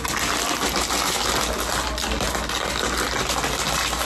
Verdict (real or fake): real